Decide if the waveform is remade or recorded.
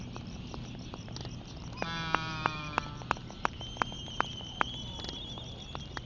recorded